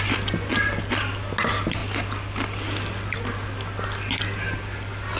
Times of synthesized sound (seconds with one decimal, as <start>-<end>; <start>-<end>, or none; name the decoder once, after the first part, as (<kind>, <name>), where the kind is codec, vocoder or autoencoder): none